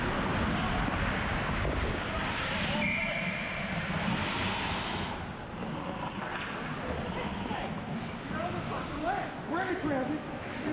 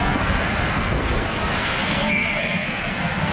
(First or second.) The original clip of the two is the first